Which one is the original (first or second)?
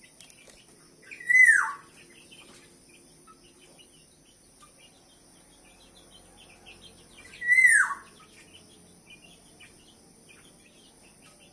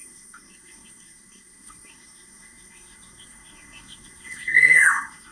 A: first